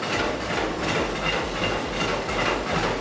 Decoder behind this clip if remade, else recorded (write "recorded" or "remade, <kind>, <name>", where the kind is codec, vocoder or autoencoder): recorded